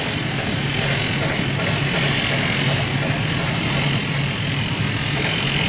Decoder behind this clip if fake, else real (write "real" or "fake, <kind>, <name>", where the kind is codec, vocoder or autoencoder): real